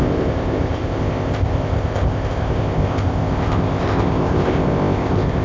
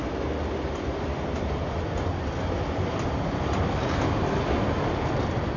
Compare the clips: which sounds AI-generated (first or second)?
first